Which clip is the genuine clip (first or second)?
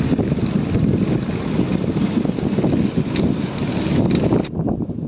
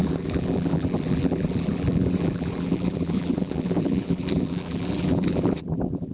first